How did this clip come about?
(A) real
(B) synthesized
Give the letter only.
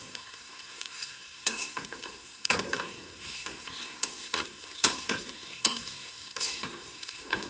B